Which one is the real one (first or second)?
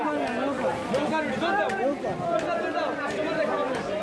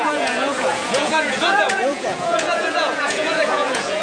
first